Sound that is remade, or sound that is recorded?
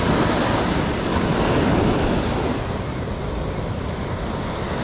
recorded